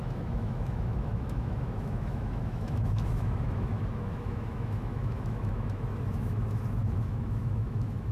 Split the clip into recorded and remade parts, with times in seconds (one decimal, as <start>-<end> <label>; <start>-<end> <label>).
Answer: 0.0-8.1 remade